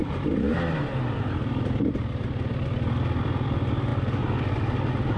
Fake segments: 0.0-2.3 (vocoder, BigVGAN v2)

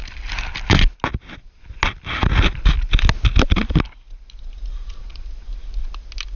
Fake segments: 0.0-0.6 (vocoder, BigVGAN v2)

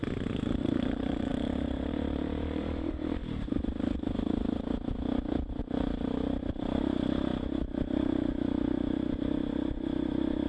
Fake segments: 0.6-3.2 (vocoder, BigVGAN v2); 5.6-7.3

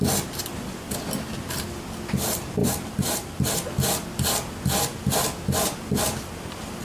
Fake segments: 2.6-3.7 (vocoder, BigVGAN v2)

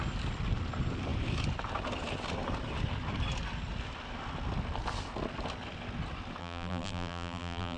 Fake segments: 6.4-7.8 (vocoder, BigVGAN v2)

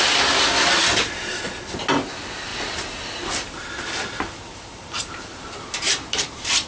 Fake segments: 2.5-6.7 (vocoder, BigVGAN v2)

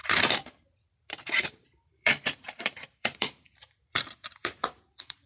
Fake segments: 0.0-5.3 (vocoder, BigVGAN v2)

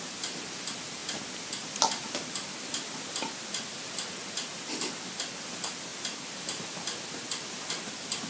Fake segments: none